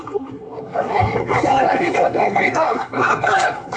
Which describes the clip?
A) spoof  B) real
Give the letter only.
A